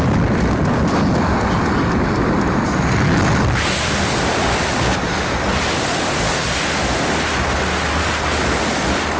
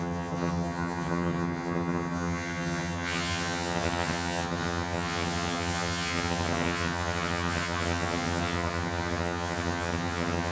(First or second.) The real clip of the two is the first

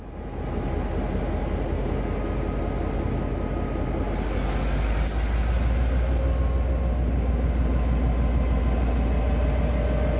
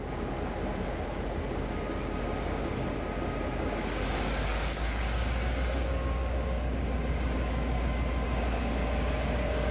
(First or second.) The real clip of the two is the first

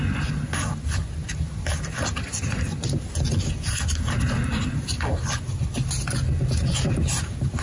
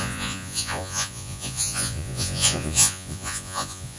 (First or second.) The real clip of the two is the first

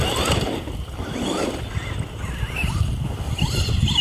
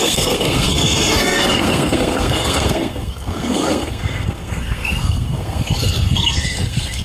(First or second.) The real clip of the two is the first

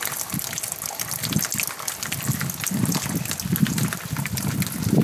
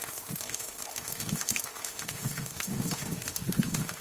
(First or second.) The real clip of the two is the first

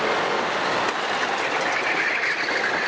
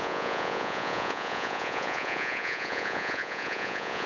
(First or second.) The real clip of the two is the first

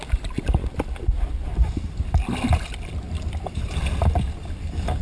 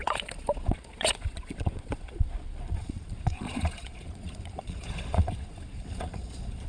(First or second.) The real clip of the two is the first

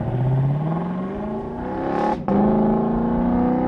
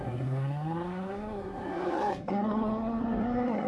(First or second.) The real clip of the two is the first